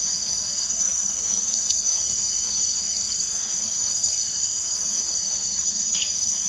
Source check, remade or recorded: remade